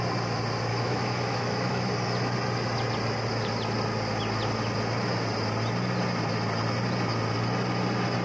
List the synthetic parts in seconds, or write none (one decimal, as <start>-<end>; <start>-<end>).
0.7-1.9